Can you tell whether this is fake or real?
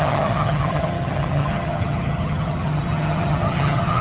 fake